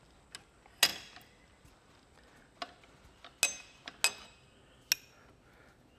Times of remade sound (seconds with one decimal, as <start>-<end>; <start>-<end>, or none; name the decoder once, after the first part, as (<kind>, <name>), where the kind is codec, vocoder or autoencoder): none